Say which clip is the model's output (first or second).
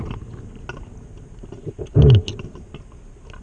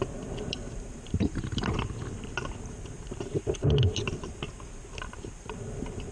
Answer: second